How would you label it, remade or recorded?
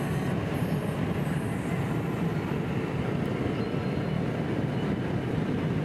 recorded